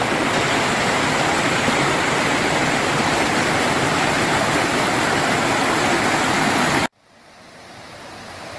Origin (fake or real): real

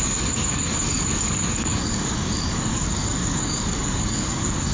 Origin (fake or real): fake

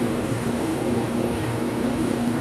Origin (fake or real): fake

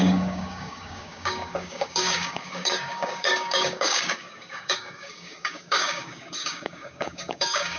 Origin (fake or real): fake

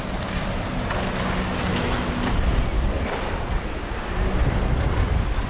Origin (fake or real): real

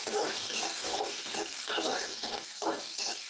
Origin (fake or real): fake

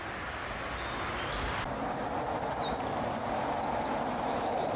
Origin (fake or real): real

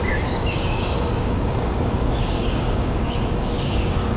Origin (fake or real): fake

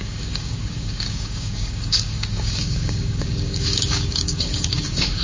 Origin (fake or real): fake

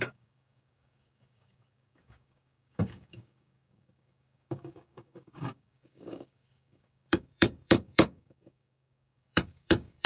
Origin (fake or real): fake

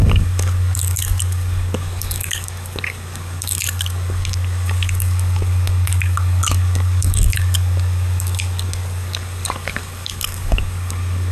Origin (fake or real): fake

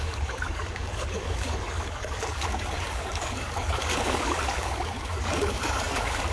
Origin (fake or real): fake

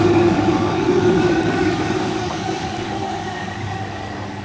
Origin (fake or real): fake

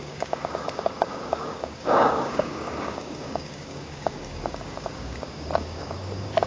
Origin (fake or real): fake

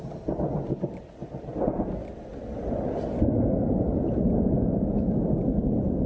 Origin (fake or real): real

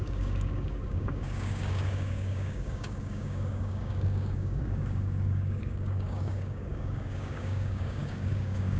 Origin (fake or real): fake